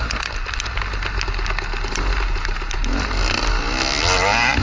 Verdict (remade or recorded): recorded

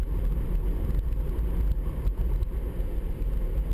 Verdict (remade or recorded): recorded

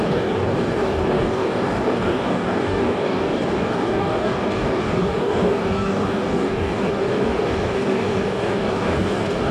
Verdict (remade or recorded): remade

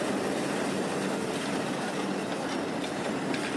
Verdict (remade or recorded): recorded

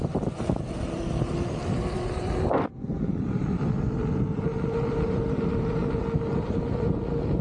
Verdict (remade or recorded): recorded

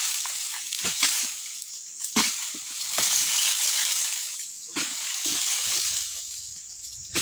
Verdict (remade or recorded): remade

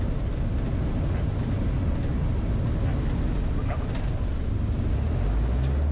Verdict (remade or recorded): recorded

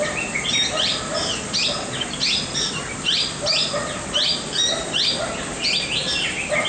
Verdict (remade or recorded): recorded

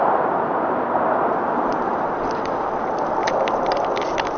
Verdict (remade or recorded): recorded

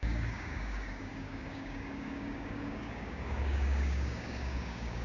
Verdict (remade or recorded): remade